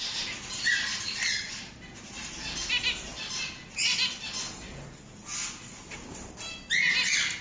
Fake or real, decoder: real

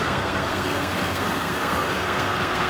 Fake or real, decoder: fake, codec, SNAC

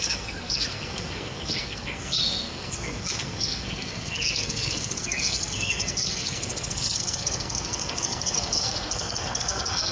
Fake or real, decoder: fake, codec, SNAC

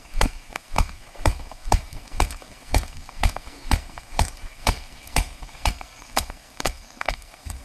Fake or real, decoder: fake, codec, SNAC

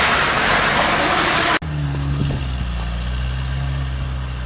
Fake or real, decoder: real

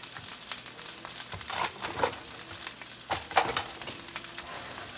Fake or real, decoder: real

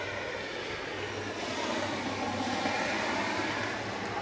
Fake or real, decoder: real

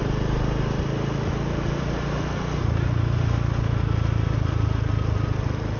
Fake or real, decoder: real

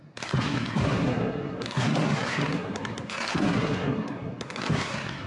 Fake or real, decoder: fake, codec, SNAC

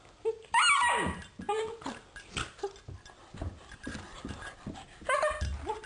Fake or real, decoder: real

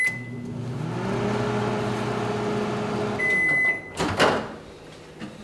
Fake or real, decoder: real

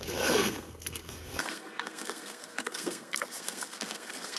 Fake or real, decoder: fake, codec, SNAC